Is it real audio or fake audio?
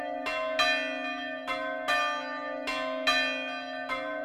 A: real